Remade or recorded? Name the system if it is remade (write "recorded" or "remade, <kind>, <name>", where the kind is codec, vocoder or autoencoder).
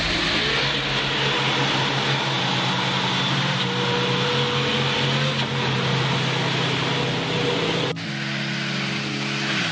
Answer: recorded